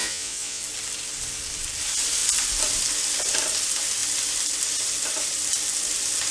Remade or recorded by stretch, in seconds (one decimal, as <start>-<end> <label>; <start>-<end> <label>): 0.0-0.6 remade; 0.6-6.3 recorded